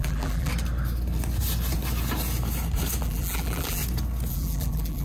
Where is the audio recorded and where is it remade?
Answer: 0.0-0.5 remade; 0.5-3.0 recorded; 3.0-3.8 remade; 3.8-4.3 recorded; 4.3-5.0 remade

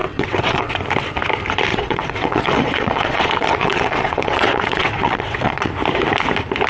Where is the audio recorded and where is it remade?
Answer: 0.0-0.7 remade; 0.7-1.7 recorded; 1.7-5.7 remade; 5.7-6.7 recorded

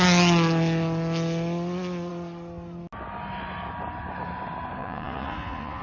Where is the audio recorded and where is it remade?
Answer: 0.0-4.8 recorded; 4.8-5.8 remade